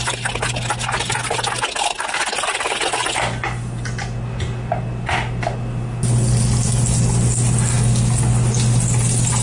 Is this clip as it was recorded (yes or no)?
yes